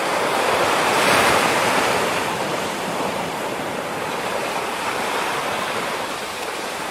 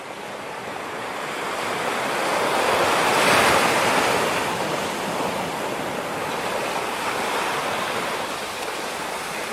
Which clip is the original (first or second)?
second